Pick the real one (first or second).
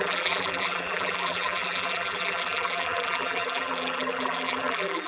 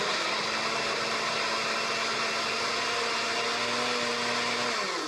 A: second